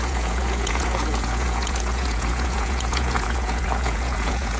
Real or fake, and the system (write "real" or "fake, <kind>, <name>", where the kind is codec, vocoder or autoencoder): fake, vocoder, Vocos